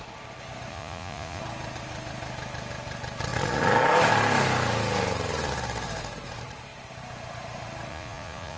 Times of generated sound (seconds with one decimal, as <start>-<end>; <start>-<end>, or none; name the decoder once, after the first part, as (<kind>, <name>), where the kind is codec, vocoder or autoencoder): 0.7-1.4 (vocoder, Vocos); 7.9-8.6